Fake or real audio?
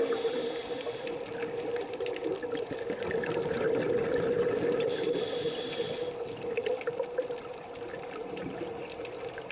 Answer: real